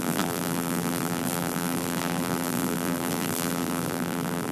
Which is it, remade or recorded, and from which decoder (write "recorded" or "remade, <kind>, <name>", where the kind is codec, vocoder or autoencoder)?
remade, vocoder, BigVGAN v2